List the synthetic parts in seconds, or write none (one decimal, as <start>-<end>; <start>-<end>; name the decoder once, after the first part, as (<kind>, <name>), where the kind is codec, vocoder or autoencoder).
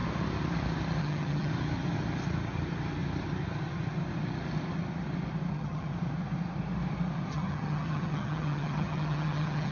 1.0-1.5 (vocoder, HiFi-GAN); 5.5-5.9; 7.3-9.7